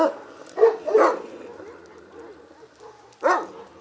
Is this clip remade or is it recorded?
recorded